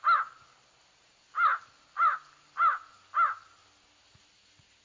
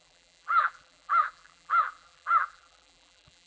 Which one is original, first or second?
first